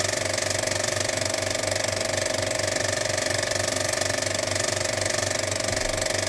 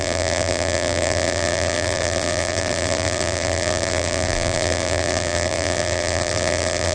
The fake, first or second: second